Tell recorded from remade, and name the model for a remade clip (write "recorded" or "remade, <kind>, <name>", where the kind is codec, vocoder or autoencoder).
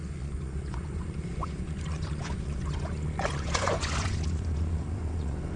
remade, vocoder, Vocos